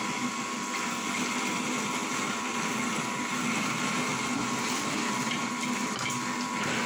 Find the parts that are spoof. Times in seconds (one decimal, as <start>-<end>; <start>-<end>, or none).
none